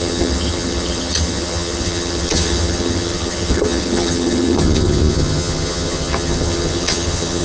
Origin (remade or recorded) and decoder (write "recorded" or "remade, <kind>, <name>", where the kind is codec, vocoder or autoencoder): remade, vocoder, HiFi-GAN